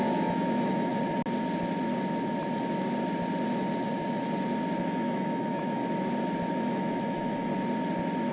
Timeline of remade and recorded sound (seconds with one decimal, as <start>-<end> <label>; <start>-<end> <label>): 0.0-0.9 remade; 0.9-4.8 recorded; 4.8-5.8 remade; 5.8-6.5 recorded; 6.5-7.5 remade; 7.5-8.3 recorded